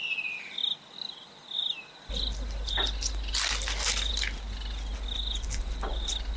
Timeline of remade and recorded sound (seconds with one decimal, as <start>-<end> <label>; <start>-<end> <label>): 0.0-6.4 recorded